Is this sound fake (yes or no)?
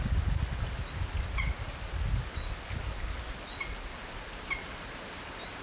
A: no